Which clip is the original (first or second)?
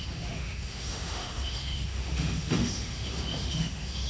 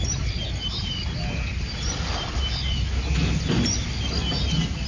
second